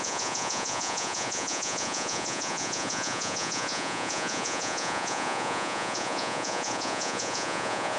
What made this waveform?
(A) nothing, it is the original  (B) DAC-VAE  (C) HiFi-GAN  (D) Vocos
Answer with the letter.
D